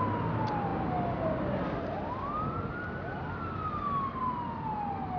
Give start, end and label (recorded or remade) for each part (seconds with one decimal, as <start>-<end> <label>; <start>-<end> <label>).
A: 0.0-5.2 recorded